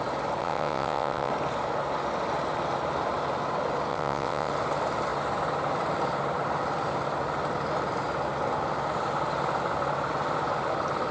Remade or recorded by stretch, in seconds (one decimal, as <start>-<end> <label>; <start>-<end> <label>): 0.0-0.4 recorded; 0.4-1.3 remade; 1.3-3.9 recorded; 3.9-4.5 remade; 4.5-11.1 recorded